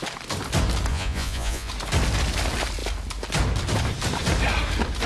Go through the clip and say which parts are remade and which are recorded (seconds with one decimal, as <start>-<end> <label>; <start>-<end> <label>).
0.0-0.9 recorded; 0.9-1.7 remade; 1.7-5.1 recorded